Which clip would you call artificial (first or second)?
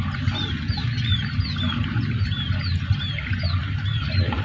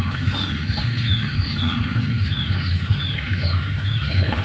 second